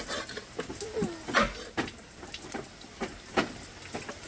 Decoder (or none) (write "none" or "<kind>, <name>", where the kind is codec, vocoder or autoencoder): none